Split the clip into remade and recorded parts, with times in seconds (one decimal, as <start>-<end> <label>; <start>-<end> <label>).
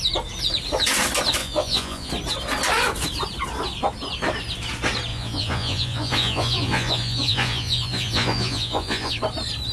0.0-1.4 recorded; 1.4-2.1 remade; 2.1-5.1 recorded; 5.1-9.1 remade; 9.1-9.7 recorded